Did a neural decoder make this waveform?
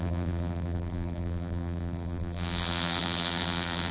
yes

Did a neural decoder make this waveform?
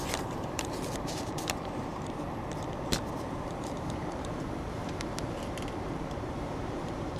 yes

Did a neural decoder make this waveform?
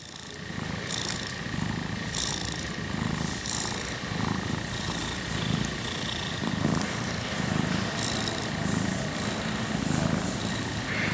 yes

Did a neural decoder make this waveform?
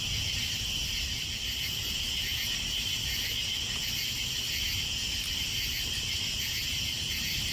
no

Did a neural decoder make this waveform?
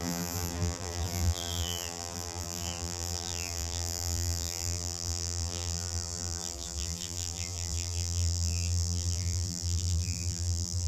yes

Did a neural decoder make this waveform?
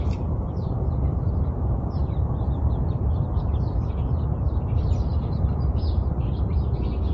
yes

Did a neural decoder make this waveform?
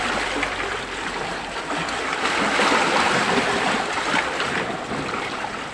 no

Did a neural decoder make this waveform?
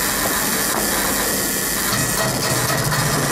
no